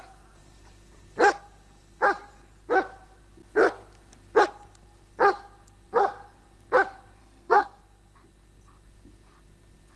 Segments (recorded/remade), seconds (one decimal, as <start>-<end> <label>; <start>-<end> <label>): 0.0-7.2 recorded; 7.2-7.8 remade; 7.8-10.0 recorded

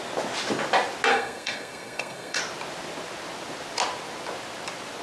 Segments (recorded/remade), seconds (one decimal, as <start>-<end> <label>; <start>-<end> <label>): 0.0-1.1 recorded; 1.1-2.4 remade; 2.4-5.0 recorded